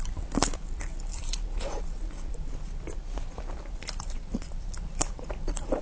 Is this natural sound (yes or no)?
no